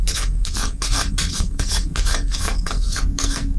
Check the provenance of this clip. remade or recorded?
remade